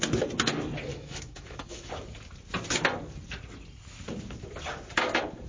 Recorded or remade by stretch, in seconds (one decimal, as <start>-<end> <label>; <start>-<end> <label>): 0.0-0.9 recorded; 0.9-1.9 remade; 1.9-5.5 recorded